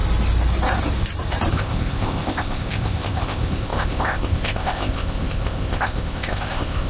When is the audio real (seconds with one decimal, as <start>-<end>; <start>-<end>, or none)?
0.0-1.5